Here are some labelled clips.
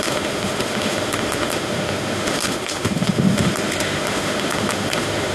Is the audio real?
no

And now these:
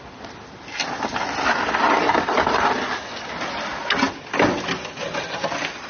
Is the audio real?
yes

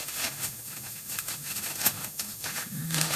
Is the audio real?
no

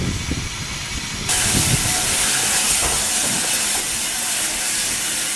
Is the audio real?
yes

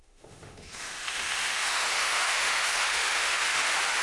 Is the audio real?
no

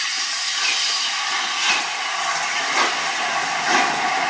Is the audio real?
yes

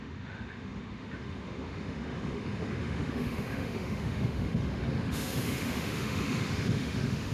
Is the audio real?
no